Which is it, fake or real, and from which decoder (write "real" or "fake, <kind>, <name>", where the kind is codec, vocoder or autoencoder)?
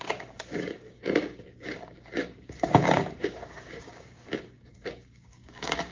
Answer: fake, codec, DAC